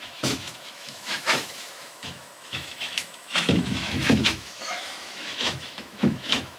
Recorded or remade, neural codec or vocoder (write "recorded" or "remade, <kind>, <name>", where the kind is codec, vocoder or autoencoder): remade, autoencoder, DAC-VAE